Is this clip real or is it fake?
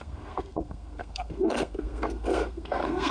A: fake